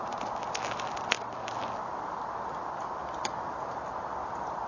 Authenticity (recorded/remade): recorded